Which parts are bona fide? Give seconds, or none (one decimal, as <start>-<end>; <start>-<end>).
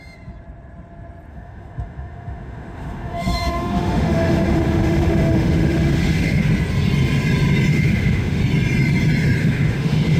0.0-1.3; 6.5-7.7; 8.4-9.4